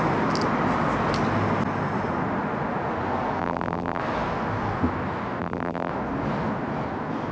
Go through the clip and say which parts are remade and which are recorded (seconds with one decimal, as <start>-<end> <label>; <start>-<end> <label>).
0.0-3.4 recorded; 3.4-4.0 remade; 4.0-5.4 recorded; 5.4-5.9 remade; 5.9-7.3 recorded